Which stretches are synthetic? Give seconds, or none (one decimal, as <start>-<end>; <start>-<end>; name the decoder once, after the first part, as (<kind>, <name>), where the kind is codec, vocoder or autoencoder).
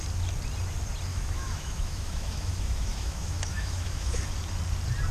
1.1-4.2 (autoencoder, DAC-VAE)